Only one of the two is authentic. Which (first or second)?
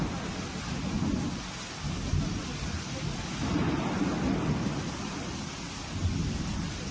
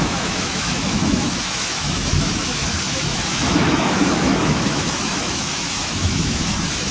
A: first